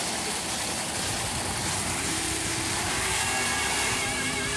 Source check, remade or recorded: remade